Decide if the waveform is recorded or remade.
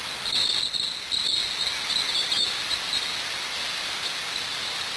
recorded